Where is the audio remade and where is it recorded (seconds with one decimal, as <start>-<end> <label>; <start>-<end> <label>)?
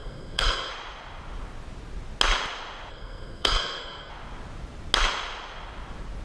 0.0-0.7 remade; 0.7-2.9 recorded; 2.9-4.1 remade; 4.1-6.2 recorded